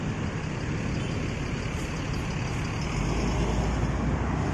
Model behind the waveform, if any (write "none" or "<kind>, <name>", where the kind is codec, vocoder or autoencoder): none